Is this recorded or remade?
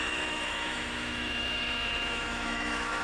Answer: remade